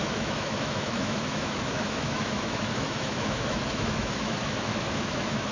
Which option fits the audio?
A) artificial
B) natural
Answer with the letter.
A